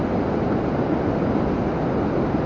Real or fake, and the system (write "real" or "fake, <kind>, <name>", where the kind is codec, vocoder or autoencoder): real